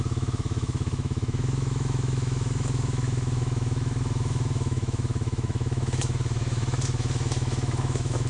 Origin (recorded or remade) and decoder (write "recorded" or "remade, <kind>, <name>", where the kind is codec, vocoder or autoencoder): remade, autoencoder, DAC-VAE